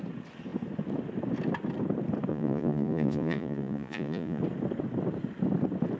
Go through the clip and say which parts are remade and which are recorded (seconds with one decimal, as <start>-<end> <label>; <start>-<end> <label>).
0.0-2.3 recorded; 2.3-4.4 remade; 4.4-6.0 recorded